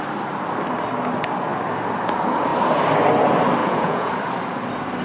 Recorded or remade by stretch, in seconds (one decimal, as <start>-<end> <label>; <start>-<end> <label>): 0.0-3.6 recorded; 3.6-4.1 remade; 4.1-5.0 recorded